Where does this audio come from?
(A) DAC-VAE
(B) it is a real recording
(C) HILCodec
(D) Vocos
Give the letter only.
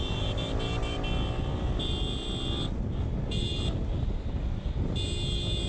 B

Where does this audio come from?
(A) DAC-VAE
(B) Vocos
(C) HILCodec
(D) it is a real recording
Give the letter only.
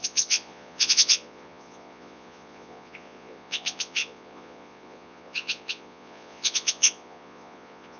B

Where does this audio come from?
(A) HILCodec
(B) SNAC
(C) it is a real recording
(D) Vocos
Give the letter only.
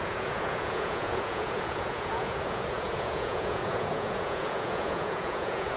D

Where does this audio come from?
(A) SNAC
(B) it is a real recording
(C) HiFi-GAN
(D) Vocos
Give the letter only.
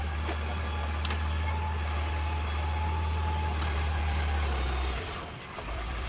B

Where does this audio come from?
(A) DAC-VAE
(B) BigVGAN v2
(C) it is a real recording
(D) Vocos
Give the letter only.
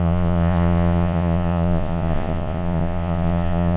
D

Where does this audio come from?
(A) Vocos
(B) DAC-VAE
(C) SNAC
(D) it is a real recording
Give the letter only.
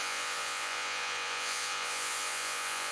A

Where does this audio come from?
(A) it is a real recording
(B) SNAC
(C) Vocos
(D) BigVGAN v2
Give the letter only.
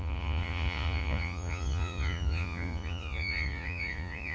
C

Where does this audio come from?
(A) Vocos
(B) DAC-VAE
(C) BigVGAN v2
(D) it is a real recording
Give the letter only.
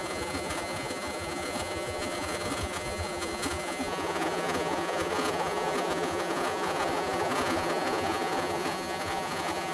A